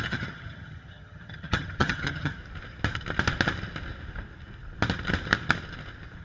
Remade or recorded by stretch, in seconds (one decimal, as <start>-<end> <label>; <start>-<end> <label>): 0.0-2.4 remade; 2.4-6.2 recorded